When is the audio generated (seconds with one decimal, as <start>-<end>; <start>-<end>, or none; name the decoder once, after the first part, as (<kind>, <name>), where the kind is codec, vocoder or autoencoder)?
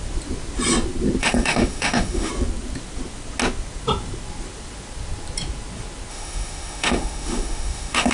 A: 1.2-2.3 (autoencoder, DAC-VAE); 6.1-8.1